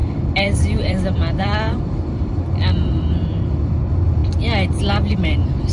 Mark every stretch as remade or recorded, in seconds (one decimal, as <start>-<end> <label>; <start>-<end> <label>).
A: 0.0-3.4 remade; 3.4-5.7 recorded